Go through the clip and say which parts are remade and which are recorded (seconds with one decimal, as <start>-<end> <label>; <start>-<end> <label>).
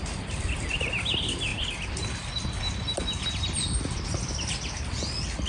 0.0-5.5 recorded